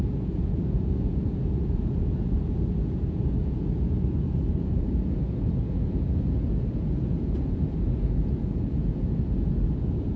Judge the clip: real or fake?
fake